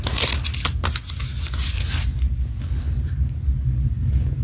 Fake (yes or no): no